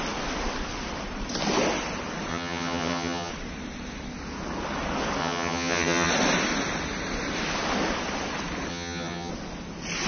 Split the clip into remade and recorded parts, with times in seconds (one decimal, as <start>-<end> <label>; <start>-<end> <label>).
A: 0.0-2.3 recorded; 2.3-3.3 remade; 3.3-5.2 recorded; 5.2-6.1 remade; 6.1-8.7 recorded; 8.7-9.3 remade; 9.3-10.1 recorded